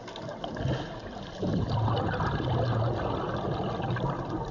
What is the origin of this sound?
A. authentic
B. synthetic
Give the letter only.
A